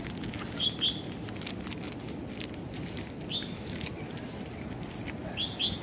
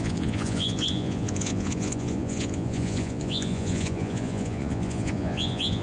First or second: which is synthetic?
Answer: second